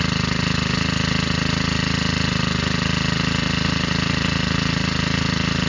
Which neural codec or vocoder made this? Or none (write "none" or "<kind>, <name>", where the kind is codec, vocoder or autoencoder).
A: none